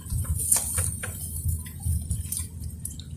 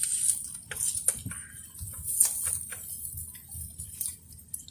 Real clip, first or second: second